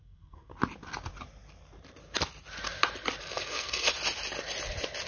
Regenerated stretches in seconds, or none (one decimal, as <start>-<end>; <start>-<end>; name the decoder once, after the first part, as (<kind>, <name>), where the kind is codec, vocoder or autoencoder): 0.0-0.5 (codec, SNAC); 3.2-3.9